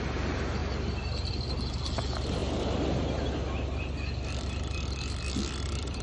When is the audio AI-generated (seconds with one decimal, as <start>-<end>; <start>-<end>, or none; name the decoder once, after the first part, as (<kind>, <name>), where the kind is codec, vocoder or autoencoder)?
none